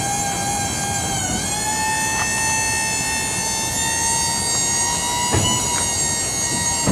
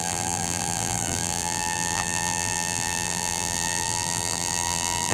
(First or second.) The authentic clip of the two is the first